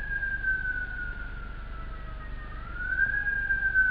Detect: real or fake real